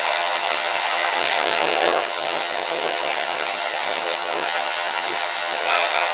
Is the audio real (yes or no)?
no